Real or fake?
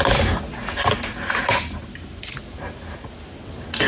real